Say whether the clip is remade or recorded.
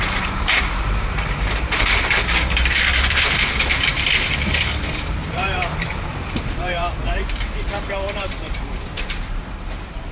remade